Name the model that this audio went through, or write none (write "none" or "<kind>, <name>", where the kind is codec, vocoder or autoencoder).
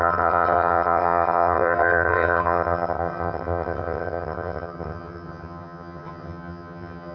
vocoder, HiFi-GAN